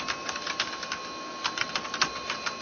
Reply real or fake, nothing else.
real